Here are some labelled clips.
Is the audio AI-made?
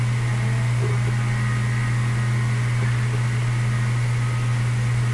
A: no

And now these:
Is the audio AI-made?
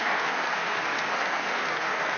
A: yes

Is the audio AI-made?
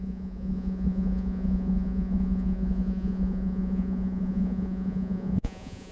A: yes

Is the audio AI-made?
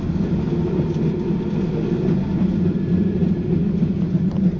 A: no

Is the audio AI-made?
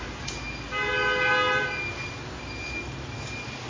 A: no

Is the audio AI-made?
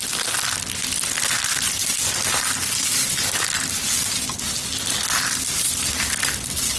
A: no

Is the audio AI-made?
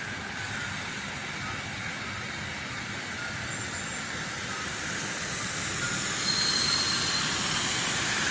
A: no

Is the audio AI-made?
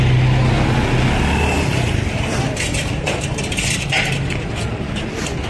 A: no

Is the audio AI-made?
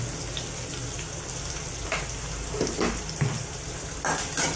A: yes